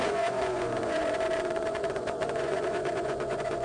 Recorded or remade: remade